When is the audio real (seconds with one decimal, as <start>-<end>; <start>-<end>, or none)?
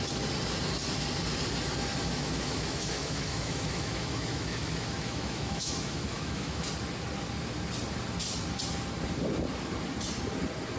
0.0-1.9; 6.7-10.8